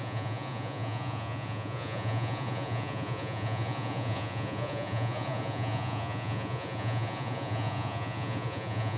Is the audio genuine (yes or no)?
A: no